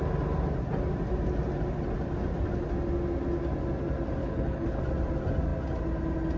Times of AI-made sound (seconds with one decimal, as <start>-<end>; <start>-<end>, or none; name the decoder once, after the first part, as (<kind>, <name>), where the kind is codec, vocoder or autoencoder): 4.2-4.8 (codec, HILCodec)